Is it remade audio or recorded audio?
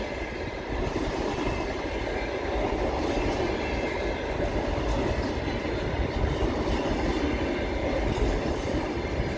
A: recorded